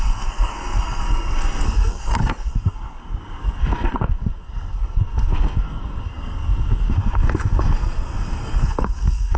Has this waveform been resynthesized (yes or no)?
yes